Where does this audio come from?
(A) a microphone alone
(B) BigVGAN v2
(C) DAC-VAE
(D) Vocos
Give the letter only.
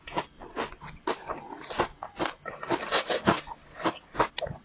A